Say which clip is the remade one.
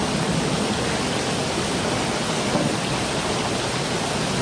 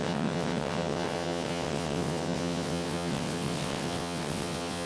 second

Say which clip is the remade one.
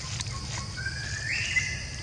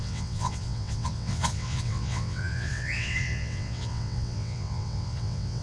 second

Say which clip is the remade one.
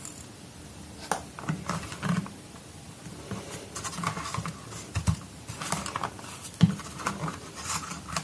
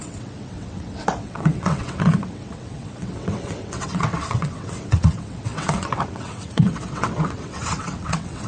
second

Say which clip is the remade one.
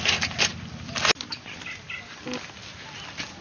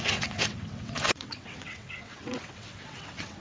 second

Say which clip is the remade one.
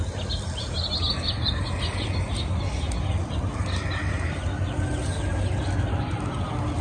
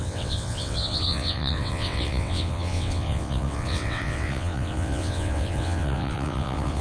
second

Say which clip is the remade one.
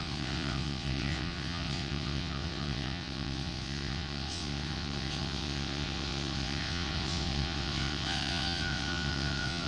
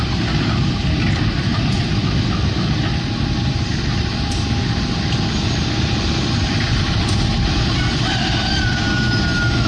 first